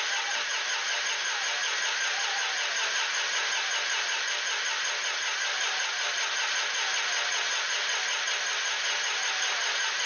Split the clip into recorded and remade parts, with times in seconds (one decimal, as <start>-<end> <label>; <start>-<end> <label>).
0.0-10.1 recorded